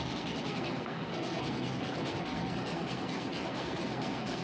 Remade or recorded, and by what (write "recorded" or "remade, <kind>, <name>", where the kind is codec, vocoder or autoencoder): remade, codec, SNAC